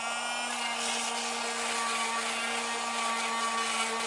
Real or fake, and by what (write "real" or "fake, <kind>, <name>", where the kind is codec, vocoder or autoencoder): real